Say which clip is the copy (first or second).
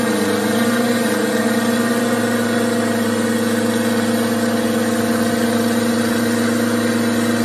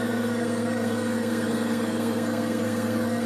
second